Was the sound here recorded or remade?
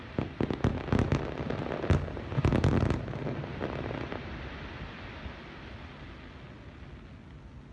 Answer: recorded